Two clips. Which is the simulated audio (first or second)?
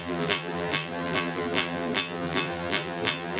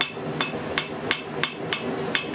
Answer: first